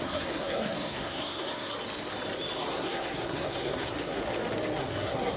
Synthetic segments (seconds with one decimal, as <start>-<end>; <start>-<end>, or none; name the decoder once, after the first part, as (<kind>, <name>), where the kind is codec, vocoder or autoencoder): 0.0-1.7 (codec, SNAC); 2.7-4.2; 4.8-5.4